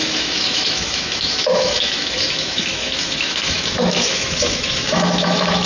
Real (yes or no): no